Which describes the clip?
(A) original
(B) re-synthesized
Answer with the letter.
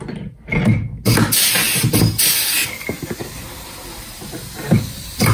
A